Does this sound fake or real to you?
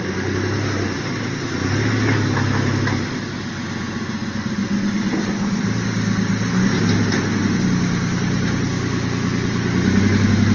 real